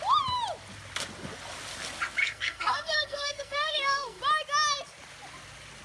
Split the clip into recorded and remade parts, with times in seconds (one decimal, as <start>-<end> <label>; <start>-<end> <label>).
0.0-2.2 recorded; 2.2-4.2 remade; 4.2-5.8 recorded